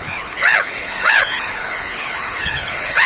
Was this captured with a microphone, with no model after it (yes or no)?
no